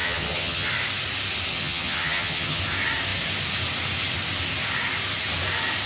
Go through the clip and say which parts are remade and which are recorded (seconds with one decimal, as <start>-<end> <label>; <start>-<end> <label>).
0.0-0.7 remade; 0.7-1.5 recorded; 1.5-2.6 remade; 2.6-5.9 recorded

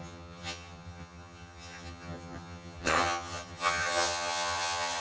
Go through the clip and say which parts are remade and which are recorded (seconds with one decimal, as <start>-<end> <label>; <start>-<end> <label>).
0.0-5.0 remade